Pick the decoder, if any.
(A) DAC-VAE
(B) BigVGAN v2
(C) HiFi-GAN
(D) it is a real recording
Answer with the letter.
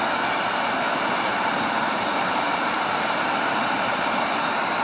B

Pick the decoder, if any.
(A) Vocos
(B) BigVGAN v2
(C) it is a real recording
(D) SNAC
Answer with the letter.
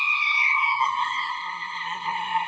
D